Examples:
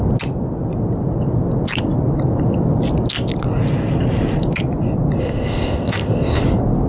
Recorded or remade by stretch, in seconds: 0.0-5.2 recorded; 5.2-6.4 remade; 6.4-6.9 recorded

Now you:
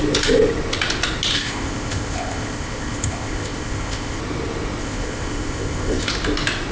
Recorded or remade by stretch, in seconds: 0.0-1.3 recorded; 1.3-4.2 remade; 4.2-4.8 recorded; 4.8-6.1 remade; 6.1-6.7 recorded

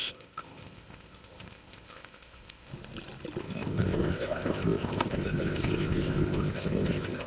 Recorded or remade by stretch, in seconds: 0.0-2.7 remade; 2.7-3.4 recorded; 3.4-7.3 remade

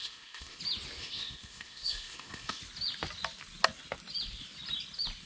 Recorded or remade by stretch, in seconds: 0.0-0.6 remade; 0.6-1.0 recorded; 1.0-2.6 remade; 2.6-5.3 recorded

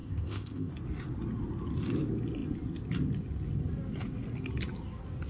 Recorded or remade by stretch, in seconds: 0.0-0.7 remade; 0.7-5.3 recorded

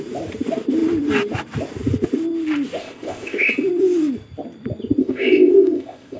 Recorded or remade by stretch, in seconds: 0.0-2.8 recorded; 2.8-3.5 remade; 3.5-5.0 recorded; 5.0-6.2 remade

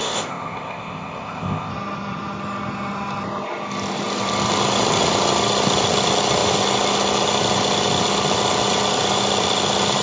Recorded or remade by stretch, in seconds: 0.0-1.7 remade; 1.7-10.0 recorded